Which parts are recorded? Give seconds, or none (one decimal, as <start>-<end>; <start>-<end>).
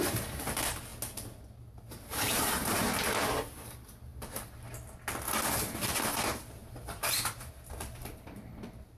0.9-1.9; 4.1-5.8